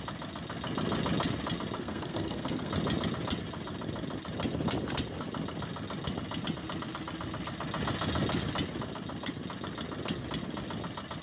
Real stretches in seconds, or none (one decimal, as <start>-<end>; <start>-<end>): 0.0-1.8; 2.7-11.2